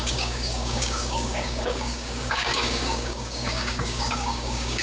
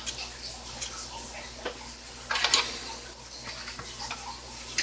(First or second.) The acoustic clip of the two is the second